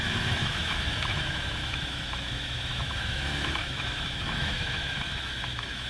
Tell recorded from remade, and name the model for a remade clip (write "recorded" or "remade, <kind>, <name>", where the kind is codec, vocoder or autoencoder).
remade, autoencoder, DAC-VAE